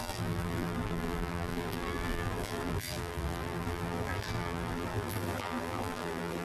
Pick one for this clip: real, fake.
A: fake